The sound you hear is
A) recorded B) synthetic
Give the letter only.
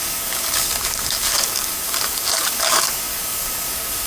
B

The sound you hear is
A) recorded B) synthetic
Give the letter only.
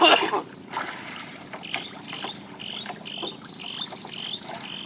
A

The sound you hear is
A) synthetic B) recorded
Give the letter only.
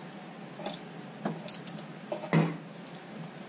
B